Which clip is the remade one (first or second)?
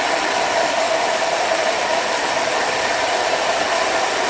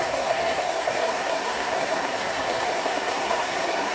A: second